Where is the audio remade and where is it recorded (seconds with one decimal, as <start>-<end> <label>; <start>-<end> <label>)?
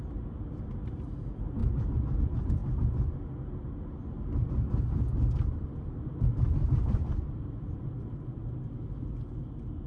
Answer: 0.0-1.6 remade; 1.6-2.2 recorded; 2.2-2.6 remade; 2.6-4.5 recorded; 4.5-8.4 remade; 8.4-9.9 recorded